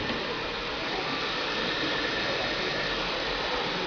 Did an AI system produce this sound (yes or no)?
yes